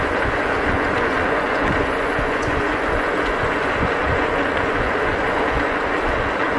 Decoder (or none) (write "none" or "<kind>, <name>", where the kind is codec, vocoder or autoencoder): vocoder, Vocos